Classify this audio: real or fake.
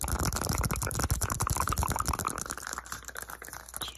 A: real